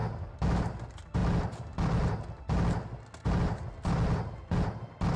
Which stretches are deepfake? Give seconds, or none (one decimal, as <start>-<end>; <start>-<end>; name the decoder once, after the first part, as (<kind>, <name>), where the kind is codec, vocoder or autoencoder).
none